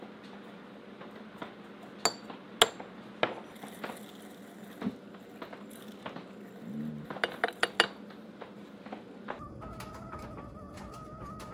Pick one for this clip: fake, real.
real